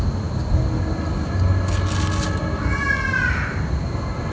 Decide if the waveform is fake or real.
real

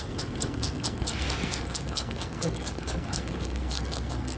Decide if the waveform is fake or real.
fake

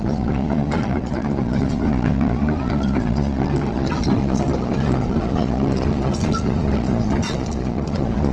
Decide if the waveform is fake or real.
fake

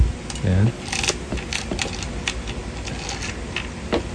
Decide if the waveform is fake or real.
real